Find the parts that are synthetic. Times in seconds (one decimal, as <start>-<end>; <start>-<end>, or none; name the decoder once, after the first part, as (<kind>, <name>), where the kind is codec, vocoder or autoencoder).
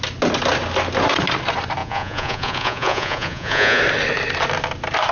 1.8-3.8 (vocoder, Vocos)